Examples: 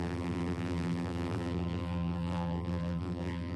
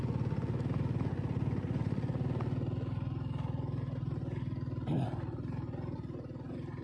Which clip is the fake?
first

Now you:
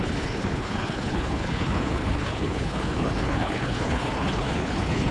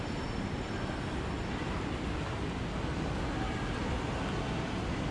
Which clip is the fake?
first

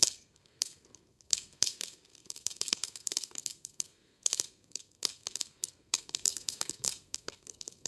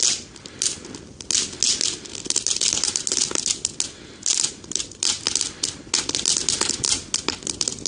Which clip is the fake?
first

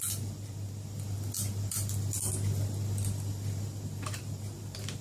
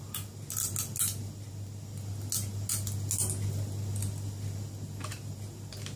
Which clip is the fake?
first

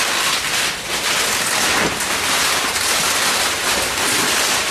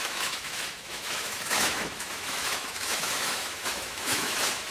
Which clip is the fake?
second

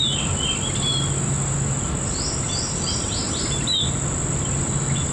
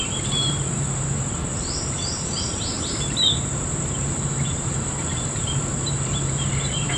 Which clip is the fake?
second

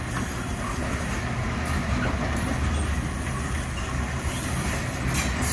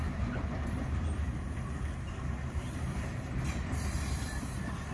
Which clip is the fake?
second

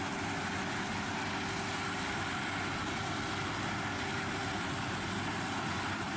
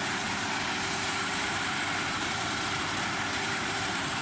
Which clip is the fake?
second